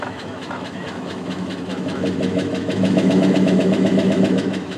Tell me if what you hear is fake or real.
fake